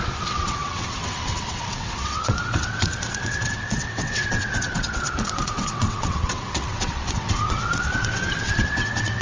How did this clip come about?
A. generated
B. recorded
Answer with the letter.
A